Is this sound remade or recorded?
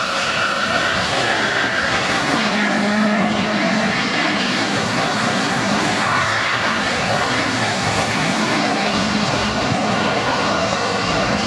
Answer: remade